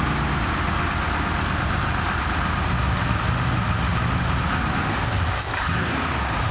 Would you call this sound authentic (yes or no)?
yes